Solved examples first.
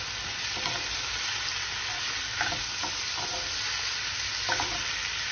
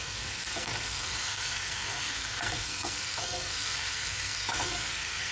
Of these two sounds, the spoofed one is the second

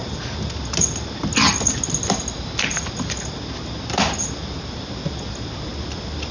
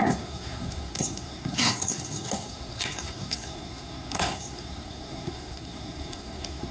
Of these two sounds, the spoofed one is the second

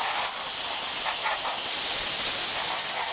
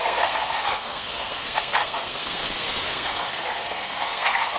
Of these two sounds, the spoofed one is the second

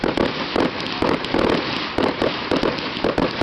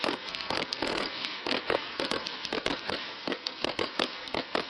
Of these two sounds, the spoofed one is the second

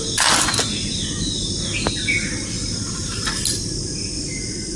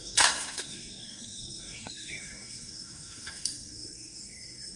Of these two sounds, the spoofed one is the second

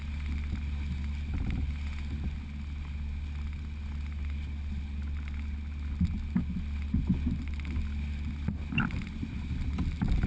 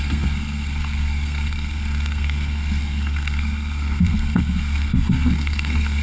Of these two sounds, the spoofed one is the second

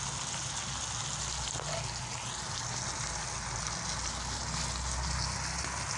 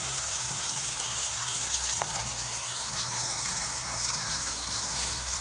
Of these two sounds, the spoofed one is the second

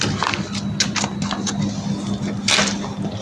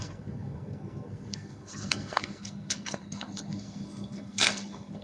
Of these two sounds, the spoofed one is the second